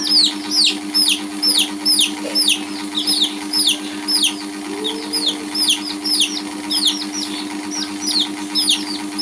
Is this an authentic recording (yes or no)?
yes